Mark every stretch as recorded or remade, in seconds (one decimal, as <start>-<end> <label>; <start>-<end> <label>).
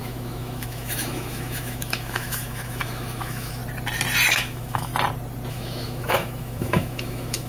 0.0-3.6 remade; 3.6-4.3 recorded; 4.3-4.9 remade; 4.9-5.5 recorded; 5.5-7.5 remade